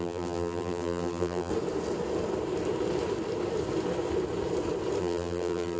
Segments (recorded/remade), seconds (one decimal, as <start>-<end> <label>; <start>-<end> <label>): 0.0-1.5 remade; 1.5-5.0 recorded; 5.0-5.8 remade